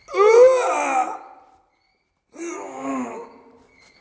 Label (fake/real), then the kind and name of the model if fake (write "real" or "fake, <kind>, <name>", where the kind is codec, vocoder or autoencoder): real